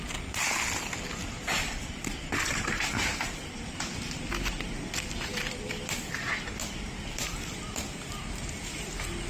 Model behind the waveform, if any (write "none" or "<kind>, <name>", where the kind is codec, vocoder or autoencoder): none